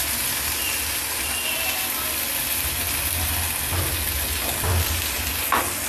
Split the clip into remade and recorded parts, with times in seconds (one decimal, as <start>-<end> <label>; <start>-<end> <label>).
0.0-5.9 recorded